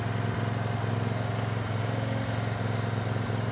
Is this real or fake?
real